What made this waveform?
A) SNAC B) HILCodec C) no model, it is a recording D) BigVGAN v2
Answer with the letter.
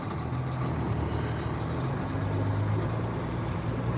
C